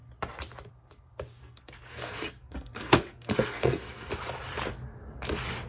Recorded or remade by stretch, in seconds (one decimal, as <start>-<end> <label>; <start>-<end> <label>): 0.0-1.4 recorded; 1.4-4.1 remade; 4.1-5.7 recorded